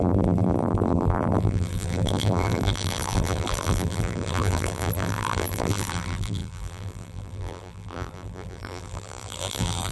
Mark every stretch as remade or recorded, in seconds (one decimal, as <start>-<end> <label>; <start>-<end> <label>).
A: 0.0-9.9 remade